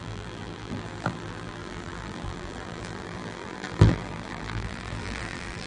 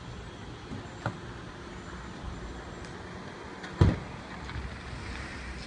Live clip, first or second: second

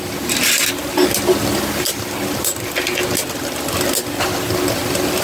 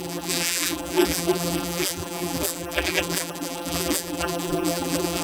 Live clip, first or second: first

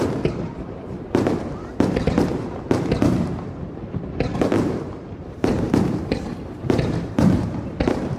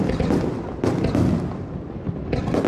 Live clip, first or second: second